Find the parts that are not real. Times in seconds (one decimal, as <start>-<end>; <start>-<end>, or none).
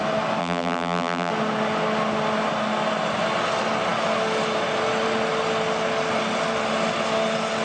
0.4-1.3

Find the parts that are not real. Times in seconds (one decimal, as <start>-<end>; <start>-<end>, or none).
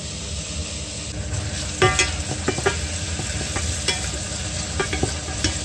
0.0-0.6; 2.8-5.6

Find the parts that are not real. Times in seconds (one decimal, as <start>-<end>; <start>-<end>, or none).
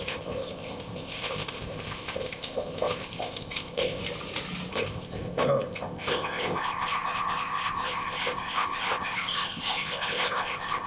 0.0-4.0; 4.7-10.9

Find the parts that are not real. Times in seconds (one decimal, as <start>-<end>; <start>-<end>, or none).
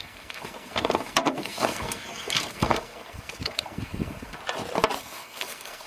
0.0-4.4; 5.0-5.9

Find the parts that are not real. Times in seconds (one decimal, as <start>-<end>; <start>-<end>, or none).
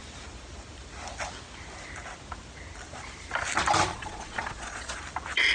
3.9-5.0